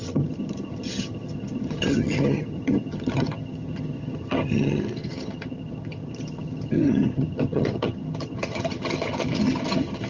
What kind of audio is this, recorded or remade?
remade